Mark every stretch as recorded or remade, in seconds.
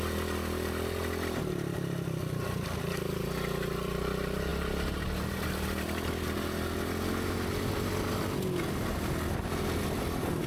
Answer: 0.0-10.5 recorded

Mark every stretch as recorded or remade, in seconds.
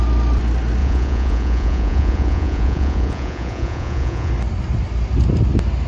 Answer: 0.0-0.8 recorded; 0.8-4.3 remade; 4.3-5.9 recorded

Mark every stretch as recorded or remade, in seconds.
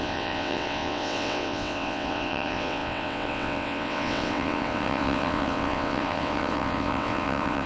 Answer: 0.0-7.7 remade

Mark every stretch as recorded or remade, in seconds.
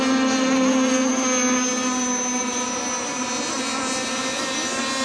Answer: 0.0-5.0 recorded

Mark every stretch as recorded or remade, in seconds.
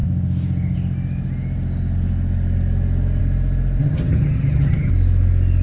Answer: 0.0-3.8 recorded; 3.8-4.9 remade; 4.9-5.6 recorded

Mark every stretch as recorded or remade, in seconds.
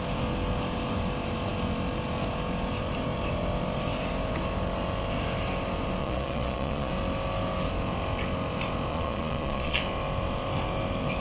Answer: 0.0-6.0 recorded; 6.0-6.9 remade; 6.9-8.9 recorded; 8.9-9.8 remade; 9.8-11.2 recorded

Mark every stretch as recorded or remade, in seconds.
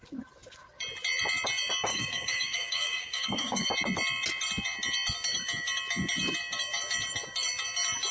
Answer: 0.0-1.9 recorded; 1.9-3.7 remade; 3.7-8.1 recorded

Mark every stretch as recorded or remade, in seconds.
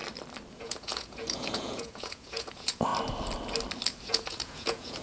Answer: 0.0-0.5 recorded; 0.5-2.9 remade; 2.9-4.0 recorded; 4.0-5.0 remade